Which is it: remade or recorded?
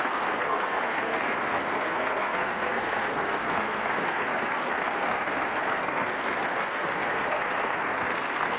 remade